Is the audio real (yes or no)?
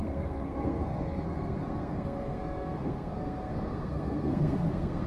no